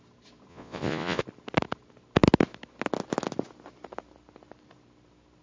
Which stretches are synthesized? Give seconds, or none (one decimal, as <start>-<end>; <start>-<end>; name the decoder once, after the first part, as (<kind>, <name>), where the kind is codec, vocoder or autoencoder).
0.5-1.2 (vocoder, Vocos)